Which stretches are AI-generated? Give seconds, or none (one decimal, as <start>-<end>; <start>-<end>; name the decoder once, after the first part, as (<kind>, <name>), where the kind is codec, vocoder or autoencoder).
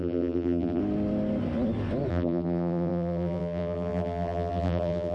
0.0-0.8 (vocoder, BigVGAN v2); 2.1-5.1